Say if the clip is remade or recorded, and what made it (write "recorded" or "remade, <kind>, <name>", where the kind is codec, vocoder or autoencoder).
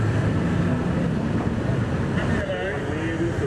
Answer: recorded